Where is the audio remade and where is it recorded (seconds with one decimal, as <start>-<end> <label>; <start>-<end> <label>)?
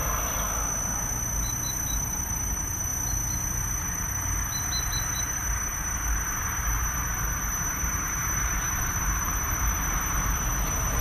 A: 0.0-2.0 recorded; 2.0-2.9 remade; 2.9-3.8 recorded; 3.8-11.0 remade